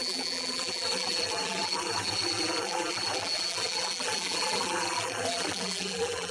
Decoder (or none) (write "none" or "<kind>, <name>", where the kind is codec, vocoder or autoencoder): vocoder, BigVGAN v2